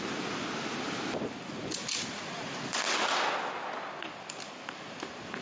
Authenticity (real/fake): real